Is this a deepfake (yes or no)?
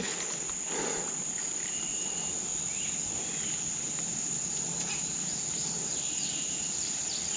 no